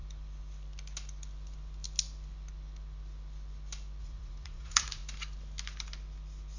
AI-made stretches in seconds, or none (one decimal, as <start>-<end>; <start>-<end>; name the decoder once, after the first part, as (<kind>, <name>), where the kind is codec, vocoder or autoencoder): 4.0-5.0 (vocoder, Vocos)